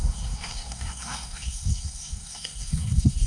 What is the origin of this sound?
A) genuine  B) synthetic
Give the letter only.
B